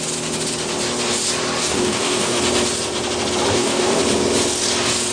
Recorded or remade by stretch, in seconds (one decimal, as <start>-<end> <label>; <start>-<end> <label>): 0.0-1.6 recorded; 1.6-2.4 remade; 2.4-3.5 recorded; 3.5-4.0 remade; 4.0-5.1 recorded